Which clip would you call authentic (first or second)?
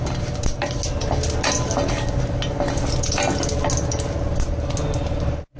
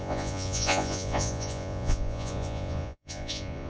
first